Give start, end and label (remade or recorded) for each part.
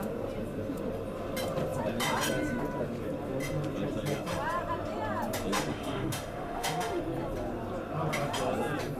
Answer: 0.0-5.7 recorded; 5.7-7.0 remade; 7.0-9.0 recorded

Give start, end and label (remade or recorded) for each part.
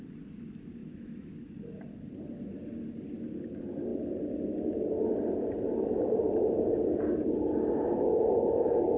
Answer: 0.0-0.8 recorded; 0.8-1.3 remade; 1.3-9.0 recorded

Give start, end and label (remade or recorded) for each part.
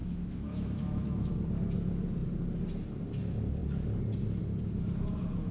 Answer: 0.0-1.3 remade; 1.3-5.5 recorded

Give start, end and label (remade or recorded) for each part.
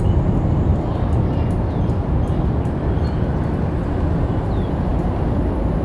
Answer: 0.0-5.8 recorded